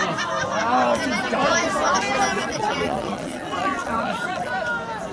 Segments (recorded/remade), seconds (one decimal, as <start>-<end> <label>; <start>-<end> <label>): 0.0-2.3 recorded; 2.3-4.5 remade; 4.5-5.1 recorded